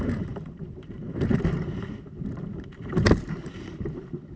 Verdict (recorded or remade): remade